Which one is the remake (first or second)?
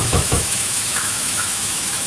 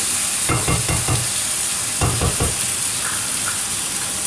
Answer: first